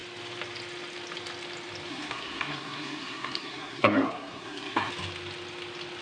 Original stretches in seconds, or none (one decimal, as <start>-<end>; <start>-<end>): 0.0-1.9; 4.9-6.0